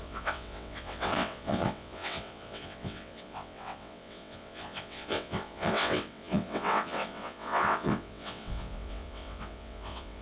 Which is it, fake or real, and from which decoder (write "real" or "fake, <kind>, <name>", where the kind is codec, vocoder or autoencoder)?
fake, vocoder, WaveNeXt